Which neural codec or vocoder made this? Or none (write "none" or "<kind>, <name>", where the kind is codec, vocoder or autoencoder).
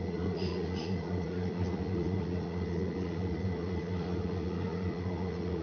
vocoder, Vocos